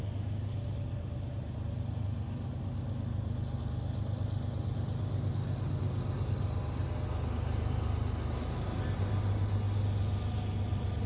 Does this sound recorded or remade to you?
recorded